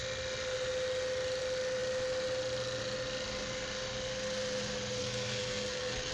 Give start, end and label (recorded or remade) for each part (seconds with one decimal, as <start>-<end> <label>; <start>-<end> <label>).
0.0-5.0 recorded; 5.0-6.1 remade